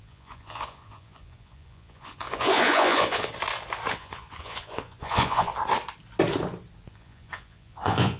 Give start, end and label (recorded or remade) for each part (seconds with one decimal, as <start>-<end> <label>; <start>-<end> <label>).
0.0-3.3 remade; 3.3-3.9 recorded; 3.9-5.5 remade; 5.5-6.9 recorded; 6.9-8.2 remade